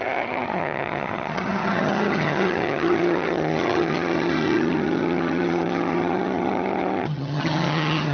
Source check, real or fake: fake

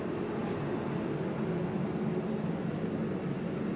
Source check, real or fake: real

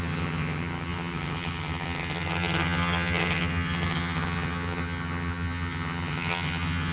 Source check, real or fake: fake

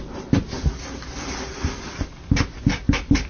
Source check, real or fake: real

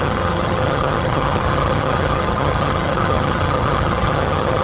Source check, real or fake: fake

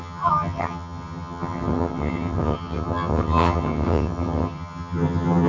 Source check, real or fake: fake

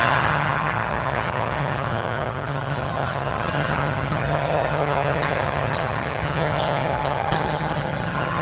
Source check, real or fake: fake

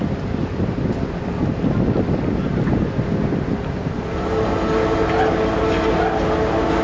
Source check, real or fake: real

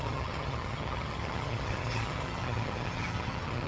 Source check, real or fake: fake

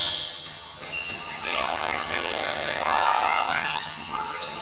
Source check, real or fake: fake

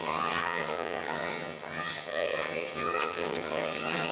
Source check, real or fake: fake